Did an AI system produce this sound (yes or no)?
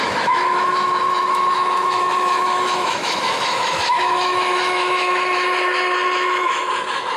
yes